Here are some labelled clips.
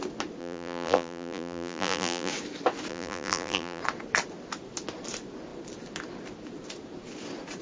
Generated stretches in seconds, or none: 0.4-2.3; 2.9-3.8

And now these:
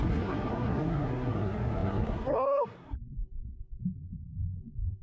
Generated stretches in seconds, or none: 0.0-3.8; 4.6-5.0